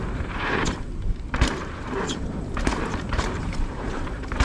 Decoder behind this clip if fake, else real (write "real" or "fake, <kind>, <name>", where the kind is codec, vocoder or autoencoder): fake, vocoder, BigVGAN v2